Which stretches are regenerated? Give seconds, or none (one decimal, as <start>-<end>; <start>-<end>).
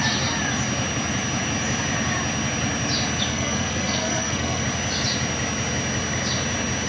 3.3-4.6